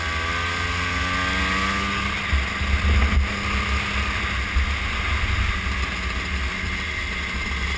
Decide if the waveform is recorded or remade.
recorded